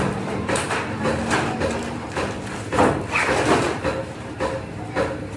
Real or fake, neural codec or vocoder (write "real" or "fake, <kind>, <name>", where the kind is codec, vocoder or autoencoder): real